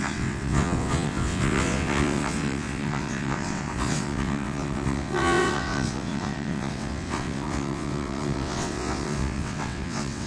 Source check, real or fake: fake